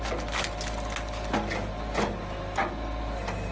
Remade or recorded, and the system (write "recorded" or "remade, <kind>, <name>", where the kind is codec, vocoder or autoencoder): recorded